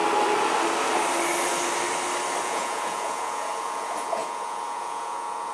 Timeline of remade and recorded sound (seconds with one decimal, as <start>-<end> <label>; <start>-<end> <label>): 0.0-2.4 recorded; 2.4-5.5 remade